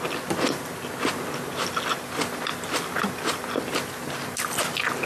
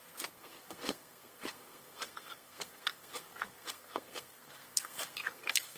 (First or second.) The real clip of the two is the first